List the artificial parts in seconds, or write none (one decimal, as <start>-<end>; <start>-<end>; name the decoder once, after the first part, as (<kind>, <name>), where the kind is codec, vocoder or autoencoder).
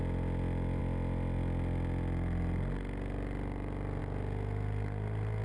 none